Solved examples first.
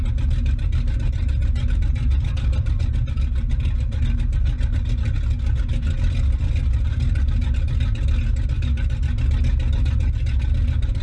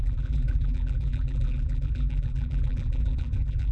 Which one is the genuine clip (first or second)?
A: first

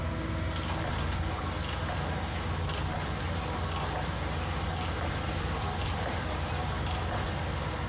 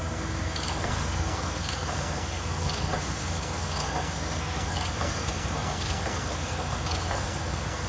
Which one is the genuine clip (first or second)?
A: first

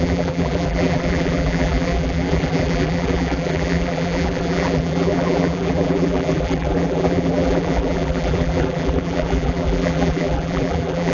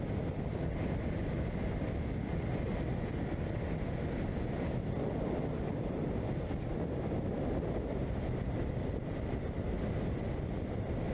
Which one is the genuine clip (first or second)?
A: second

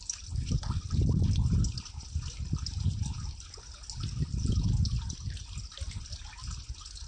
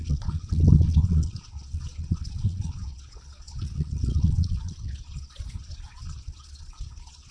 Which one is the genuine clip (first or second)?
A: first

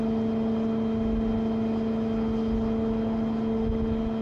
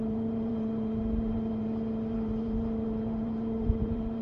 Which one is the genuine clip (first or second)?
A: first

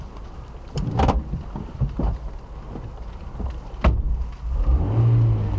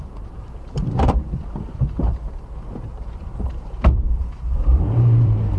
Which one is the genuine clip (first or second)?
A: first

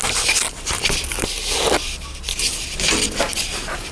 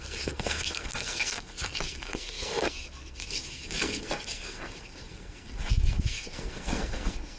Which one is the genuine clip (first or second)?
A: first